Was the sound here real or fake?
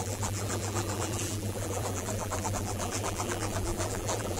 fake